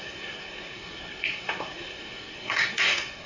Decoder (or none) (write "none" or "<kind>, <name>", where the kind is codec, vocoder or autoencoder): codec, SNAC